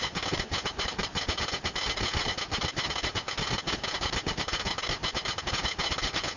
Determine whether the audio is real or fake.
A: real